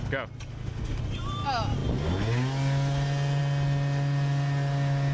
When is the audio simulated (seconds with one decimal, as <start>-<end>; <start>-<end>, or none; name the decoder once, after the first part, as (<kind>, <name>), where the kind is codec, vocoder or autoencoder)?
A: 0.5-1.0 (autoencoder, DAC-VAE)